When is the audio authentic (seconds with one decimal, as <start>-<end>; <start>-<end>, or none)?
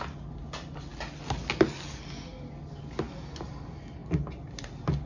0.0-5.1